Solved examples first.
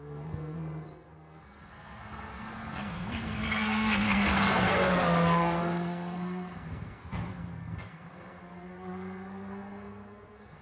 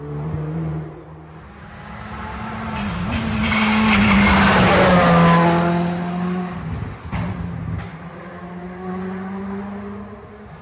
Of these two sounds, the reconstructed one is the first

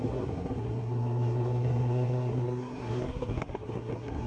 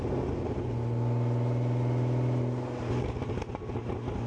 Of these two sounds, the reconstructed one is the first